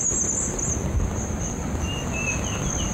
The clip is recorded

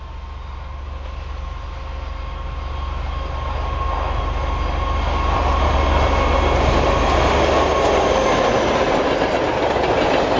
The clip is recorded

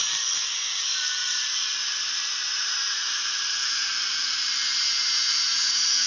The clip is remade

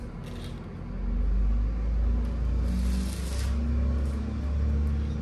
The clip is recorded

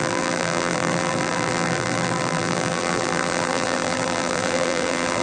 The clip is remade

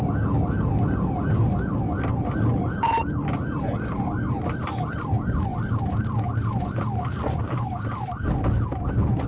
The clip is recorded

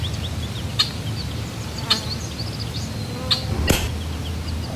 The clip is recorded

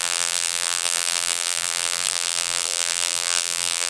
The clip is remade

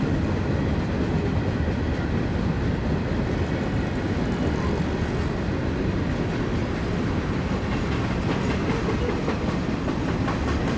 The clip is recorded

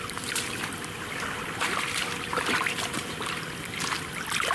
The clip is remade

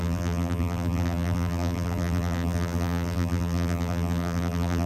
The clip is remade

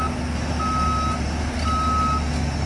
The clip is recorded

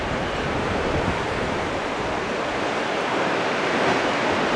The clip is remade